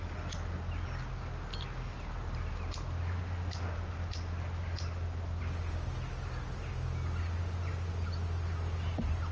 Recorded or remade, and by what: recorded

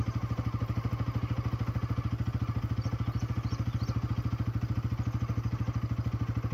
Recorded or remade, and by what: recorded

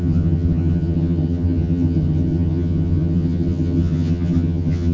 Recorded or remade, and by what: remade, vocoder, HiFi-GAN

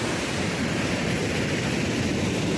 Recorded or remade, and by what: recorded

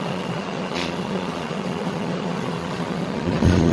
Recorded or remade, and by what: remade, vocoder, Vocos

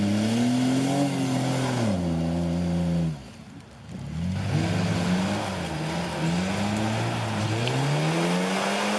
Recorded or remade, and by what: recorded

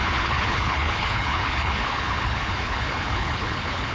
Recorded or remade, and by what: remade, codec, HILCodec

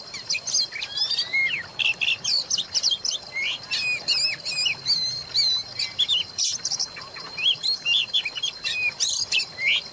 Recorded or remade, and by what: recorded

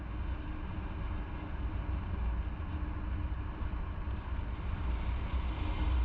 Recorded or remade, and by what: recorded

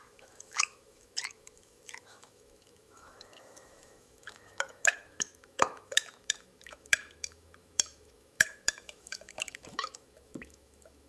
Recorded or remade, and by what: remade, autoencoder, DAC-VAE